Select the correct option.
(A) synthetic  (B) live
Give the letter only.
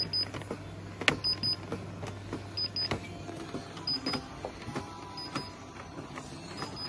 B